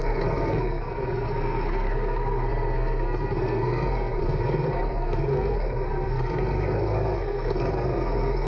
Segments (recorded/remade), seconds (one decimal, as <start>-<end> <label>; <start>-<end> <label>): 0.0-8.5 remade